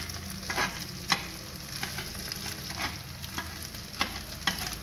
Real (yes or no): yes